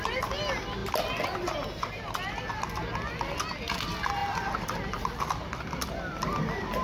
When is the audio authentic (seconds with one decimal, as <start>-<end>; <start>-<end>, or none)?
0.0-6.8